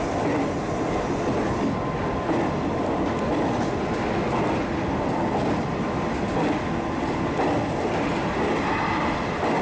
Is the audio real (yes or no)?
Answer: yes